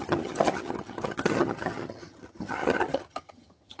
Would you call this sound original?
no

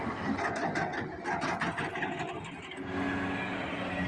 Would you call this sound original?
yes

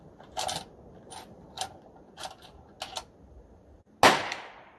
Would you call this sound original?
yes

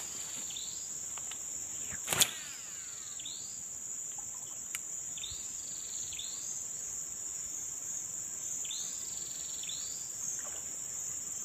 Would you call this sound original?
yes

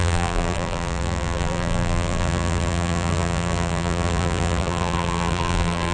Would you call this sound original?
no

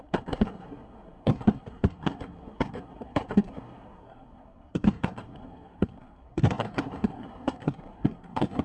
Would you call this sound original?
no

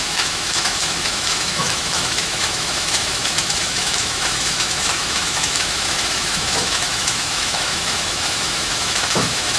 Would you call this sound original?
no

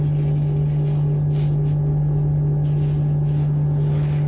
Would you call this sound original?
yes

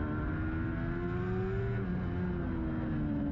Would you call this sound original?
yes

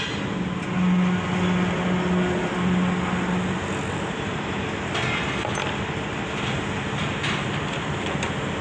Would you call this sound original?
yes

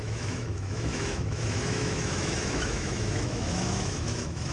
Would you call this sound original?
no